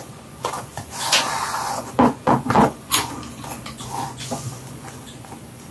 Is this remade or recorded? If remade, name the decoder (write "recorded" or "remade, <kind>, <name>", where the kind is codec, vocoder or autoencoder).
remade, vocoder, Vocos